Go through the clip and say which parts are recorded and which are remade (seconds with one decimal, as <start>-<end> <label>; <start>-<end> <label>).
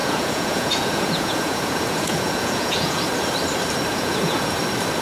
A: 0.0-3.0 remade; 3.0-3.9 recorded; 3.9-4.6 remade; 4.6-5.0 recorded